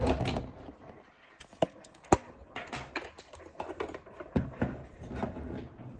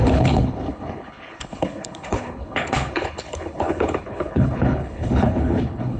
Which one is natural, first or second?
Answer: first